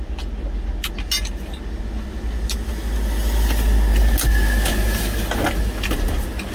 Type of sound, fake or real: real